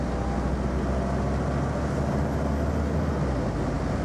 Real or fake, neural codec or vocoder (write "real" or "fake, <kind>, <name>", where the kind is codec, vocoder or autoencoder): real